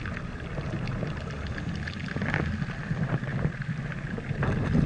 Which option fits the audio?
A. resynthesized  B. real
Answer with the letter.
B